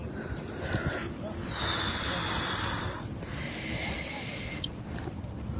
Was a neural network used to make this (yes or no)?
no